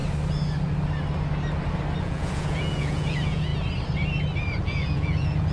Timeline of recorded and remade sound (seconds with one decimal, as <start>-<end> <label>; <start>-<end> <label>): 0.0-2.0 recorded; 2.0-3.5 remade; 3.5-4.6 recorded; 4.6-5.5 remade